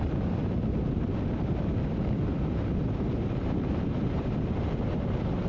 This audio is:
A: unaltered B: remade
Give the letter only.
B